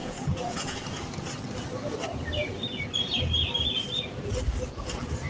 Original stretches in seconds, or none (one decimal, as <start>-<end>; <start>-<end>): 1.1-5.3